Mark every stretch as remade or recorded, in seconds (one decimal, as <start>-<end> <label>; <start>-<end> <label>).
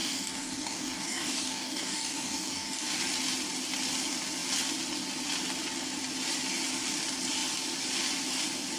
0.0-3.0 remade; 3.0-8.8 recorded